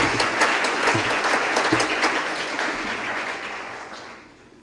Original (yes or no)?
no